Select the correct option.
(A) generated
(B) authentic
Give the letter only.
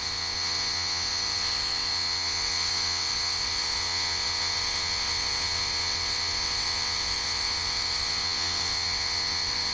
A